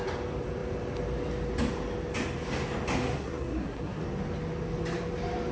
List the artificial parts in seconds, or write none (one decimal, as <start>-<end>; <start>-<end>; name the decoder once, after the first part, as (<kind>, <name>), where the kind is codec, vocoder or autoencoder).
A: 3.0-4.0 (codec, SNAC)